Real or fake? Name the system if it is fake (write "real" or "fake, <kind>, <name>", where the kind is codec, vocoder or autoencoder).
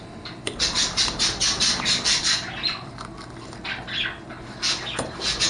real